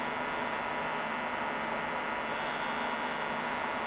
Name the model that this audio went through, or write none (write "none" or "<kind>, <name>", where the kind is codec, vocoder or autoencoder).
none